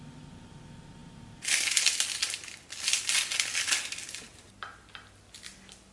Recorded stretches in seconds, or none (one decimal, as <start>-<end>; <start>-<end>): 0.0-5.9